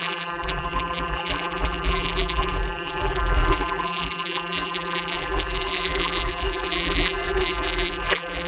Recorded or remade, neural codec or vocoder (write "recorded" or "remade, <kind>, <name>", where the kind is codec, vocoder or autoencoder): remade, vocoder, BigVGAN v2